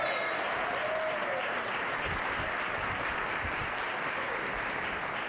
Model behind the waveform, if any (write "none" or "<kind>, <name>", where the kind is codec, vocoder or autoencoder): none